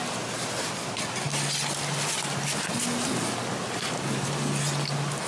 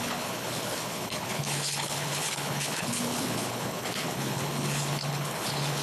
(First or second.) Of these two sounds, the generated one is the second